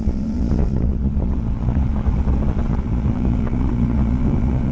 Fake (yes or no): yes